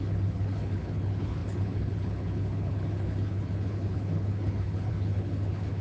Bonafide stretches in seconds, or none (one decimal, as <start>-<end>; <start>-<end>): none